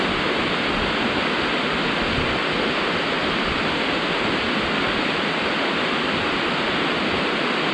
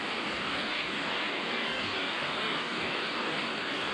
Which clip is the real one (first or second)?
first